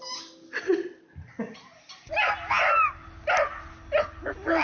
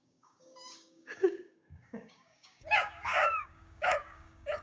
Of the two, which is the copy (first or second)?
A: second